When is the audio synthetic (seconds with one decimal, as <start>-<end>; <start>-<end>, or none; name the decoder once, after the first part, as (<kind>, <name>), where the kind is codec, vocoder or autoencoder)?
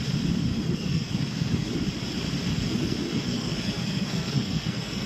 0.5-1.7 (codec, SNAC); 2.5-5.1